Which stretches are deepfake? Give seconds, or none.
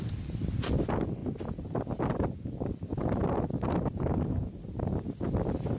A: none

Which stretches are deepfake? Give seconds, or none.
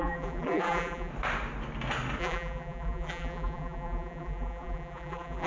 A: 0.0-1.1 (vocoder, BigVGAN v2); 2.2-5.5